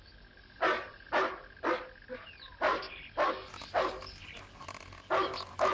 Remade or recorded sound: recorded